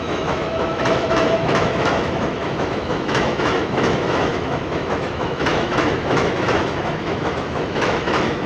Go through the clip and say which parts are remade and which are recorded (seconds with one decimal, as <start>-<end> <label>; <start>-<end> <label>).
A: 0.0-8.5 remade